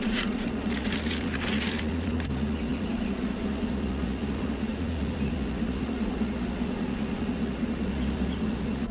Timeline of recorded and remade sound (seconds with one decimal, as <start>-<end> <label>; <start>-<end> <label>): 0.0-8.9 remade